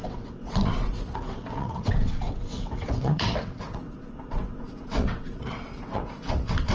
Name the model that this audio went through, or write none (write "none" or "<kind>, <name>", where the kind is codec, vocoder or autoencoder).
vocoder, WaveNeXt